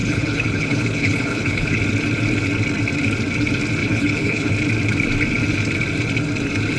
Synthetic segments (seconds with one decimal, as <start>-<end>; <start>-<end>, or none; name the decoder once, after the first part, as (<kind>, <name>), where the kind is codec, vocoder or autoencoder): 0.0-1.8 (codec, HILCodec); 3.8-4.5